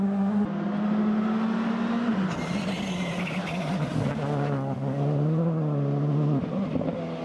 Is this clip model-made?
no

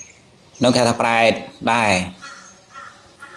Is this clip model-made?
no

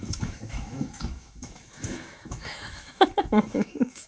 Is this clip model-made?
yes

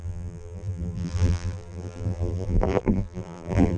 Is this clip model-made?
yes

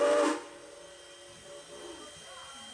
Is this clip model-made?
no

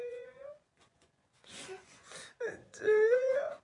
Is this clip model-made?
yes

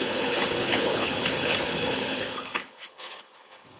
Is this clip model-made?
yes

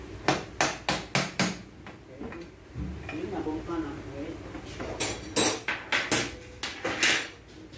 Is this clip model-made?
no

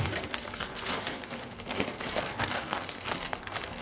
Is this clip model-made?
yes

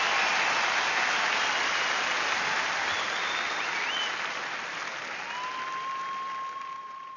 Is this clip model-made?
no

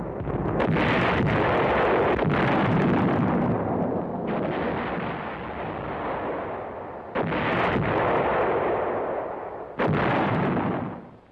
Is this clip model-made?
no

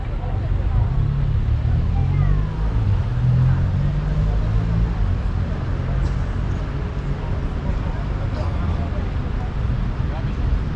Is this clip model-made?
no